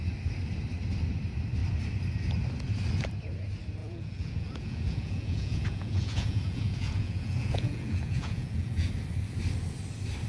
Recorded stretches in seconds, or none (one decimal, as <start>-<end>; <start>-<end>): 0.0-3.8; 8.9-10.3